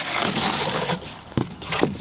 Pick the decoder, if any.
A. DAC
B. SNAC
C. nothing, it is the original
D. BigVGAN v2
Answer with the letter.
A